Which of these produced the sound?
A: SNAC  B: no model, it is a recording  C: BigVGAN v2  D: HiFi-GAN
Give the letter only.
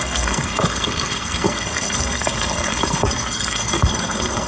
A